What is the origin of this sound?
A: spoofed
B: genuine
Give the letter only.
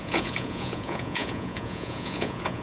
A